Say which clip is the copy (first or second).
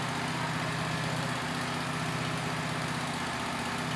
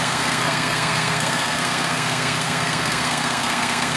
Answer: second